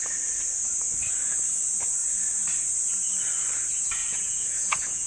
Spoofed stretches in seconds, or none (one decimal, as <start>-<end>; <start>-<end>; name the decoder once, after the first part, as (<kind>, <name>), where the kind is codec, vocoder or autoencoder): 4.0-5.1 (vocoder, Vocos)